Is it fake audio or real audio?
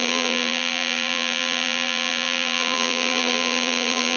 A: fake